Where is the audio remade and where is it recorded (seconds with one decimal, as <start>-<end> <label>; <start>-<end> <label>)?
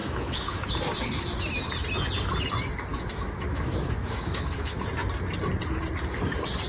0.0-0.6 remade; 0.6-2.9 recorded; 2.9-4.8 remade; 4.8-6.7 recorded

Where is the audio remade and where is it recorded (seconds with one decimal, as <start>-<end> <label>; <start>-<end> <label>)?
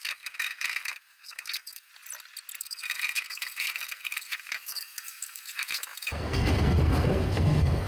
0.0-1.9 remade; 1.9-2.6 recorded; 2.6-7.9 remade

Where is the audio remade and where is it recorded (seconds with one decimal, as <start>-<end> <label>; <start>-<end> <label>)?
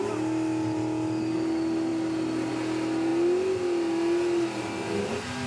0.0-5.5 recorded